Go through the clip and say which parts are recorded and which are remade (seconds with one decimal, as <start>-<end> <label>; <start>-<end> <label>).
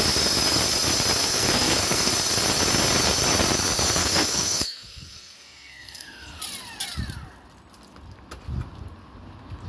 0.0-1.2 recorded; 1.2-2.1 remade; 2.1-4.0 recorded; 4.0-6.4 remade; 6.4-9.7 recorded